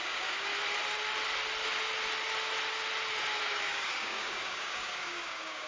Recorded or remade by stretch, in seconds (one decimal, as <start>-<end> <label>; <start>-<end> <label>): 0.0-0.5 remade; 0.5-3.4 recorded; 3.4-5.7 remade